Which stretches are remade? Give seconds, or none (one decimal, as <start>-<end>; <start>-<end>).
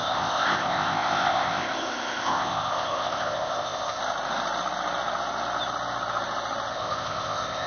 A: 0.0-4.0; 6.7-7.7